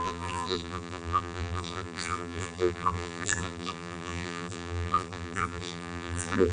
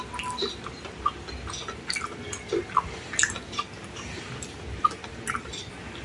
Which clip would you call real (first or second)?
second